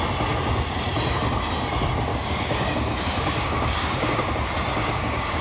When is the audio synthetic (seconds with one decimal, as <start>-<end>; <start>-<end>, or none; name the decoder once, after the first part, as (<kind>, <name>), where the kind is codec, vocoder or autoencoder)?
2.1-4.3 (codec, DAC); 4.8-5.4